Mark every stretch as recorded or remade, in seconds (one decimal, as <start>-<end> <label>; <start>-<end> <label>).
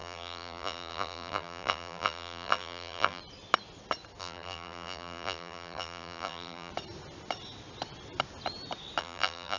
0.0-3.2 remade; 3.2-4.2 recorded; 4.2-6.7 remade; 6.7-9.0 recorded; 9.0-9.6 remade